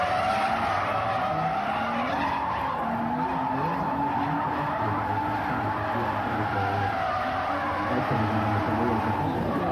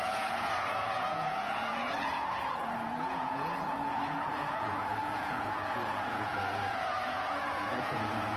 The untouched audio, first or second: first